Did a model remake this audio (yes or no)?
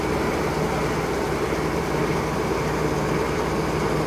yes